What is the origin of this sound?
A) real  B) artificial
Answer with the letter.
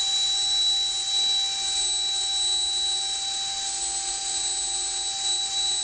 A